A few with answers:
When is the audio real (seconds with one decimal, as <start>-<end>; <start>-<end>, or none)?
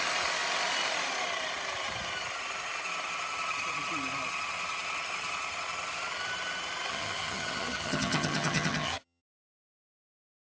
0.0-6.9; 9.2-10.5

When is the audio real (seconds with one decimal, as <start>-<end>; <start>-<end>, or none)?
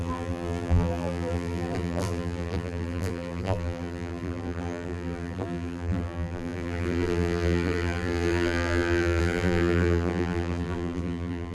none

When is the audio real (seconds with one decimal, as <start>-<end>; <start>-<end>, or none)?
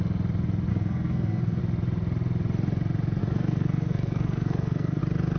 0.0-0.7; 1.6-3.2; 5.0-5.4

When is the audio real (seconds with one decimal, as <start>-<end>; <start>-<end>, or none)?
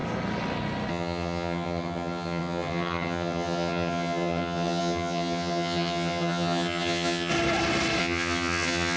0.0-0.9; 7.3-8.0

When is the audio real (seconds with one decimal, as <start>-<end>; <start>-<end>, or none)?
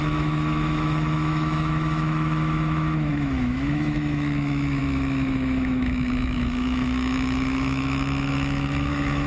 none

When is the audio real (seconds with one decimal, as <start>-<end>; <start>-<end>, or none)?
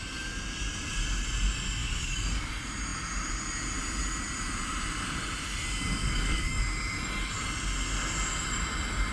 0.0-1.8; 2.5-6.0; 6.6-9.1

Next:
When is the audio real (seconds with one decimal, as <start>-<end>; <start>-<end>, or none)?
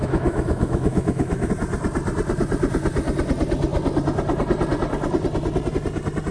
1.5-6.3